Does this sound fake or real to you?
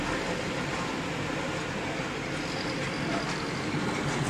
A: real